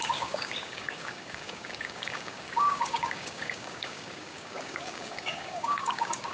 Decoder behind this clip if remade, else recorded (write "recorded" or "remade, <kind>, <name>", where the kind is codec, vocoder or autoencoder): remade, codec, DAC